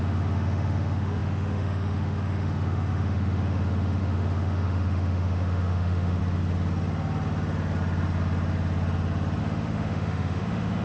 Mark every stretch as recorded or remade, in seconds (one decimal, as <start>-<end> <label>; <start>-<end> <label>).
0.0-6.2 remade; 6.2-9.4 recorded; 9.4-10.8 remade